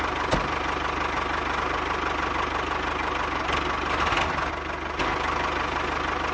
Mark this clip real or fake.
real